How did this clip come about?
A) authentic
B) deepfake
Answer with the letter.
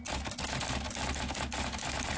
A